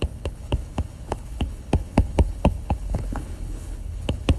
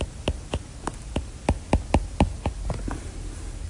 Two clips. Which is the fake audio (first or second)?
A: first